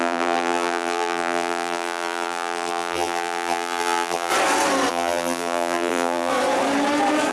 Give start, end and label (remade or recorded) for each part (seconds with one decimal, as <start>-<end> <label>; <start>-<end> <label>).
0.0-4.3 remade; 4.3-4.9 recorded; 4.9-6.3 remade; 6.3-7.3 recorded